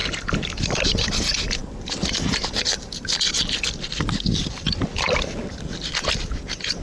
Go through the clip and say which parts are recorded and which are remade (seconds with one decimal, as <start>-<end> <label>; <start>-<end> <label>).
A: 0.0-6.8 recorded